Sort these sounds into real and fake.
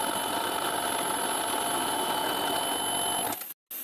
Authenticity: real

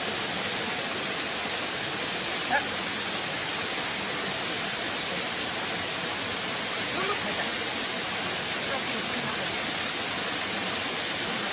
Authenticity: real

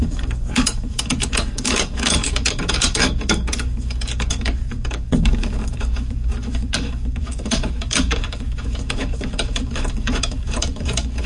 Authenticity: fake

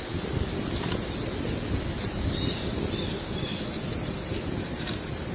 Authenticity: real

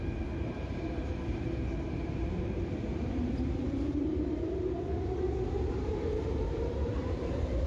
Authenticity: fake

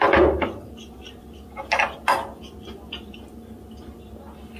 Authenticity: real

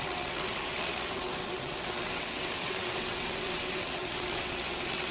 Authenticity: fake